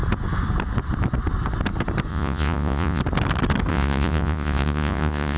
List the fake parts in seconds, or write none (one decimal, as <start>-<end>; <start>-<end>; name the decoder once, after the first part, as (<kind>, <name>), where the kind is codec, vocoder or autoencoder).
2.1-3.0 (vocoder, Vocos); 3.7-5.4